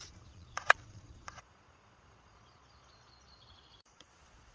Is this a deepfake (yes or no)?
yes